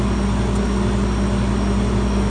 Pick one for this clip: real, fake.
real